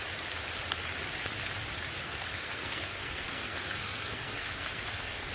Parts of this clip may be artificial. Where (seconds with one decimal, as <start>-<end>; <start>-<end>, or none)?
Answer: 2.0-5.3